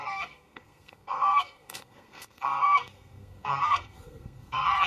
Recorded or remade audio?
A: remade